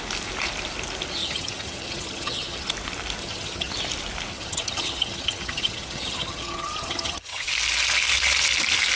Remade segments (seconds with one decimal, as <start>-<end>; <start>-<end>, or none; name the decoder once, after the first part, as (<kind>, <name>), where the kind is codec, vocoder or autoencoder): 1.2-2.7 (vocoder, HiFi-GAN); 3.2-3.7; 4.3-7.5